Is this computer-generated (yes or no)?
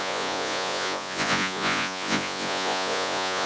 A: yes